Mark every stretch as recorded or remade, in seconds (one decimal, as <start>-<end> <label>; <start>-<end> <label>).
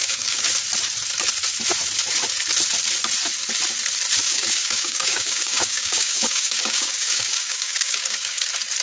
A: 0.0-0.5 remade; 0.5-4.2 recorded; 4.2-8.4 remade; 8.4-8.8 recorded